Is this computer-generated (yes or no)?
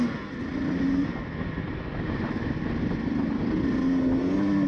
no